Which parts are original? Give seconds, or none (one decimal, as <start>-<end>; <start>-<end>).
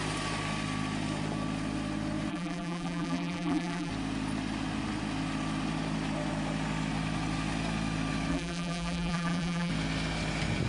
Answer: 0.0-2.3; 3.9-8.3; 9.7-10.7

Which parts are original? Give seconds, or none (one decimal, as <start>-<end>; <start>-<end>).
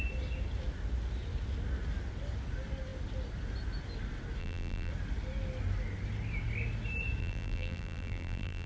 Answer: 0.0-4.4; 4.9-7.2